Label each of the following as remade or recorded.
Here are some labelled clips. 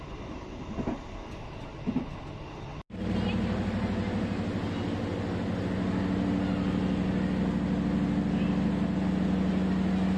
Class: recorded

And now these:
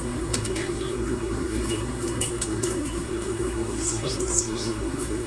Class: remade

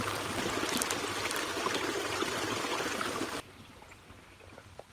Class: recorded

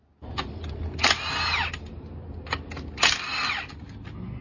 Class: recorded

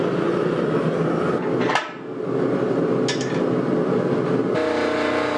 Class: recorded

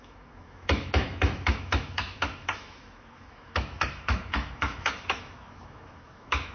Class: remade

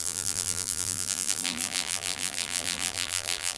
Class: remade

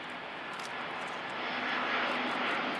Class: recorded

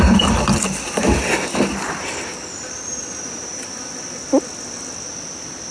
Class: recorded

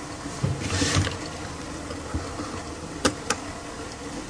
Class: remade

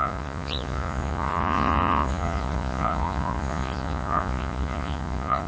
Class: remade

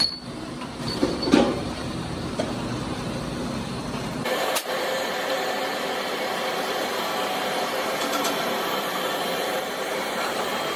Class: remade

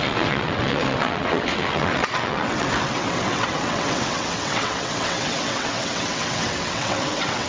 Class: remade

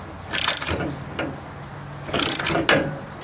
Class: recorded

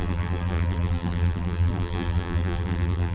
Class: remade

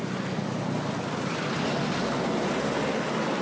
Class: recorded